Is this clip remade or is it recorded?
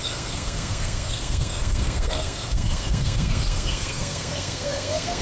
remade